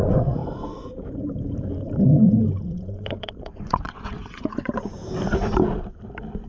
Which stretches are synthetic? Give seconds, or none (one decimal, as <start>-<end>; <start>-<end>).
0.0-0.4; 2.7-5.0